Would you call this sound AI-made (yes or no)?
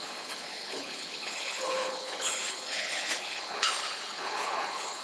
yes